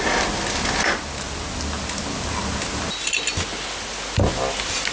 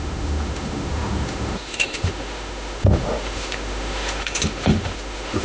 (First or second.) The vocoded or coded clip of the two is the second